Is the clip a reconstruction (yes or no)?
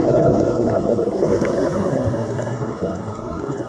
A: yes